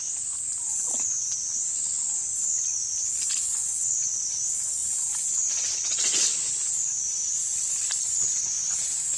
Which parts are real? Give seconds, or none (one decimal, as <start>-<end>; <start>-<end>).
0.0-9.2